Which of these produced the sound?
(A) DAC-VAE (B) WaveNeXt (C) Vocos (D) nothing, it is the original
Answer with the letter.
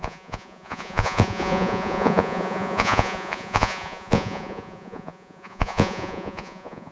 C